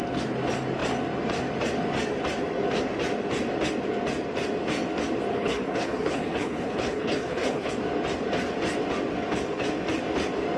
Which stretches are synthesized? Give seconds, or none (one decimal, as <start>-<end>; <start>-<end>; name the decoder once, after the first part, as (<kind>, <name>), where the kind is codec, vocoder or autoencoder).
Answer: 5.3-7.7 (codec, HILCodec)